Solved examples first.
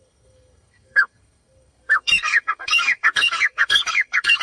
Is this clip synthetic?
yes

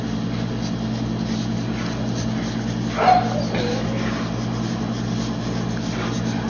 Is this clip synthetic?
no